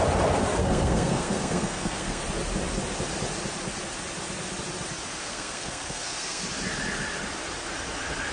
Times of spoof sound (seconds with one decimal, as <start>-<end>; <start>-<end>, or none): 0.6-2.2; 5.2-6.4